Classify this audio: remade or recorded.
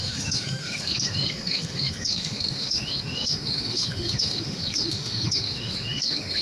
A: remade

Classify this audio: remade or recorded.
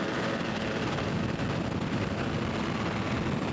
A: recorded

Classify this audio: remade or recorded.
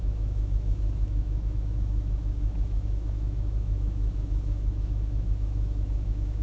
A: remade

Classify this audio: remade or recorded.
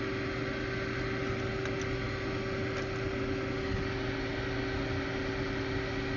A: recorded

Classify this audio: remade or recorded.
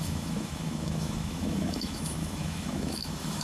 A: remade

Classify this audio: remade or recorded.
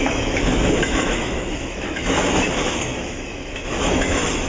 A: remade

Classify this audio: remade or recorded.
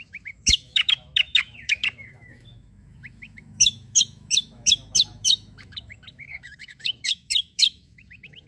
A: remade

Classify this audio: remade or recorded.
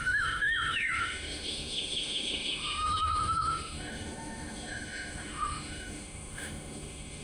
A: remade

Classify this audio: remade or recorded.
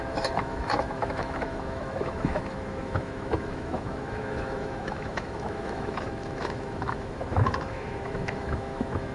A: remade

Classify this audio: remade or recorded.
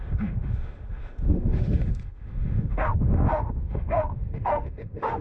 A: remade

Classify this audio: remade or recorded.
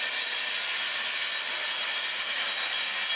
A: recorded